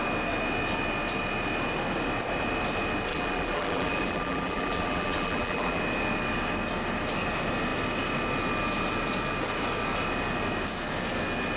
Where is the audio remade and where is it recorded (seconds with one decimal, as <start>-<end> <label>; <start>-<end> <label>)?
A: 0.0-3.1 recorded; 3.1-5.8 remade; 5.8-11.6 recorded